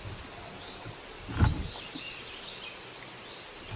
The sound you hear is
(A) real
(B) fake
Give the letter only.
A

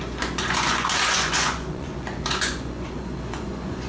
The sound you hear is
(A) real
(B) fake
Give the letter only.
B